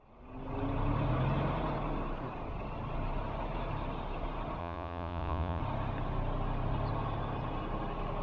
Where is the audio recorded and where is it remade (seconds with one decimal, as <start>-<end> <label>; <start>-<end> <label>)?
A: 0.0-4.6 recorded; 4.6-5.6 remade; 5.6-8.2 recorded